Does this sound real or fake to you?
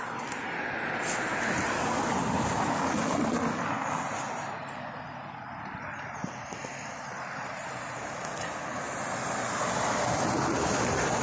real